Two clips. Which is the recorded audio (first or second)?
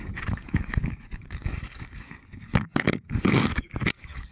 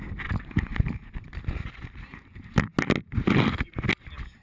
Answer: second